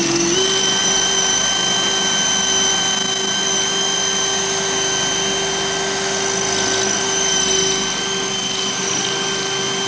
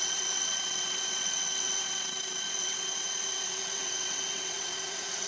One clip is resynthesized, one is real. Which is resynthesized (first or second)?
second